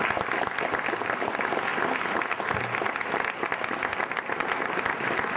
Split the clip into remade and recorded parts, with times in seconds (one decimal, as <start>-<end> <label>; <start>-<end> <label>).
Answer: 0.0-5.4 recorded